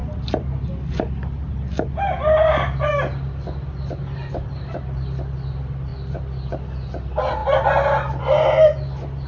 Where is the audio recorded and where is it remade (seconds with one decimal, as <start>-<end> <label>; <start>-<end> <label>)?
0.0-9.3 recorded